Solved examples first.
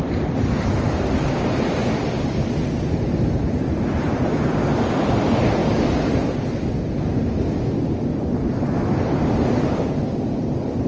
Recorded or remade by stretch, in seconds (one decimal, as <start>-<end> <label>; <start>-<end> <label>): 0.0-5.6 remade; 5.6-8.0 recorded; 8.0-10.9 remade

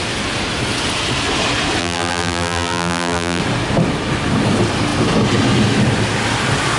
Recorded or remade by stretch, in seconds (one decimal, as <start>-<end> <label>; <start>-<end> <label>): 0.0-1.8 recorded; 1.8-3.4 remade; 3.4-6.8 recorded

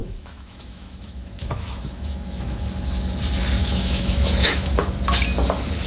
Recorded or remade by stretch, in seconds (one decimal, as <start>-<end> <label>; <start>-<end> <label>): 0.0-2.7 remade; 2.7-3.6 recorded; 3.6-4.8 remade; 4.8-5.9 recorded

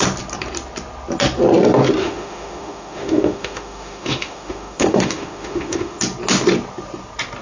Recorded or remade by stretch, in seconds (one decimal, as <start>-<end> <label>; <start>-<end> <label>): 0.0-2.0 recorded; 2.0-6.0 remade; 6.0-7.4 recorded

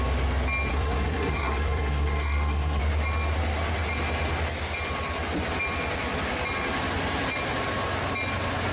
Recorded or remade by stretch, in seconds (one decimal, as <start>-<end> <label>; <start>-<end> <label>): 0.0-0.7 recorded; 0.7-2.8 remade; 2.8-8.7 recorded

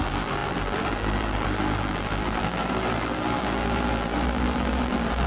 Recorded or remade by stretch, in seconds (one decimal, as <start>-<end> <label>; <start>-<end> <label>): 0.0-5.3 remade

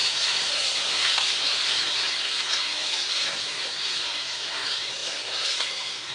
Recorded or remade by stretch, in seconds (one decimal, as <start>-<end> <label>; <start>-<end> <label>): 0.0-6.1 remade